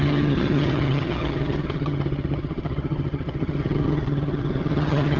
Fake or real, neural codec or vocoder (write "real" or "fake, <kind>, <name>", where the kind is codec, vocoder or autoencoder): fake, vocoder, HiFi-GAN